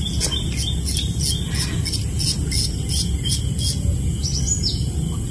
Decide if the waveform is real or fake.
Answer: real